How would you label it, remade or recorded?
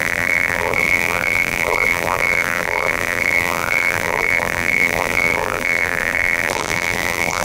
remade